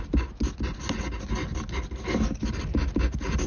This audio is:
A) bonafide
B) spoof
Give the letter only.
A